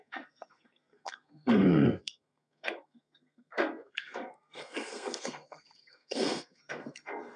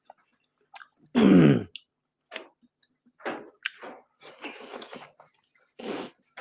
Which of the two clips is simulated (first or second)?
first